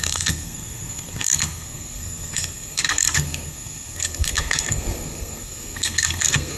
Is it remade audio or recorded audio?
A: remade